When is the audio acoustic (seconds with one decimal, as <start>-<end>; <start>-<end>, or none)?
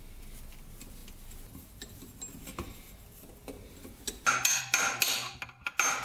0.0-6.0